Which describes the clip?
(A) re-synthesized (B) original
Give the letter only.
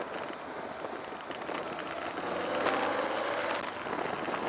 B